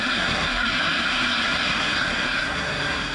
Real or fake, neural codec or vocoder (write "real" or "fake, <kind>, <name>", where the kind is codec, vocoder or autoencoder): fake, codec, SNAC